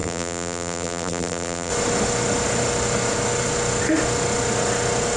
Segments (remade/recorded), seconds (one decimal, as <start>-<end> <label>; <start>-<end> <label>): 0.0-1.7 remade; 1.7-5.2 recorded